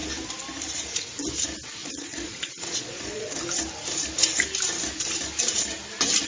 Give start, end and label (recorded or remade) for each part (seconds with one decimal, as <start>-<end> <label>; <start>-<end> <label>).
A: 0.0-1.8 recorded; 1.8-3.3 remade; 3.3-6.3 recorded

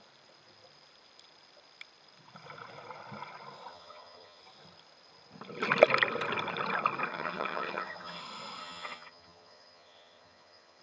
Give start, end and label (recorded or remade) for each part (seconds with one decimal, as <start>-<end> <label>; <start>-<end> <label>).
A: 0.0-3.7 recorded; 3.7-4.4 remade; 4.4-7.1 recorded; 7.1-8.2 remade; 8.2-8.6 recorded; 8.6-10.8 remade

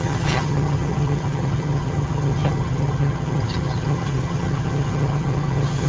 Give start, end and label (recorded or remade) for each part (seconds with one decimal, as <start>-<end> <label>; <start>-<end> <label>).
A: 0.0-5.9 remade

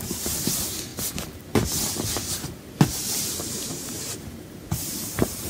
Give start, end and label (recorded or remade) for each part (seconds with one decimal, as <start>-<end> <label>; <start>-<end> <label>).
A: 0.0-0.9 remade; 0.9-3.4 recorded; 3.4-5.5 remade